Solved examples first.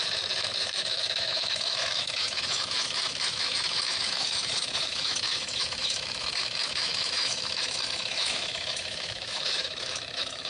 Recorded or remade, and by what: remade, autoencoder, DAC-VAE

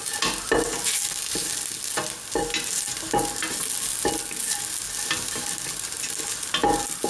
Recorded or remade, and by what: recorded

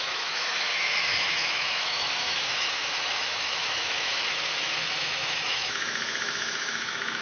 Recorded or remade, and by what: remade, autoencoder, DAC-VAE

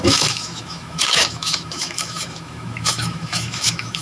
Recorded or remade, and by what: remade, autoencoder, DAC-VAE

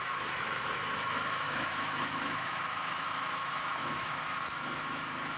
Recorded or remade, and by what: remade, autoencoder, DAC-VAE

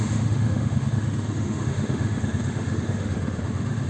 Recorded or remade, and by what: remade, autoencoder, DAC-VAE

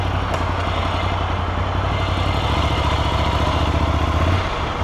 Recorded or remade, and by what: recorded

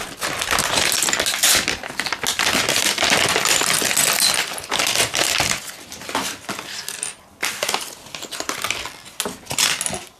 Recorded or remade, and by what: recorded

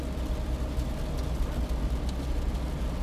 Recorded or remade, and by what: recorded